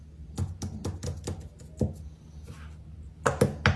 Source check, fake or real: real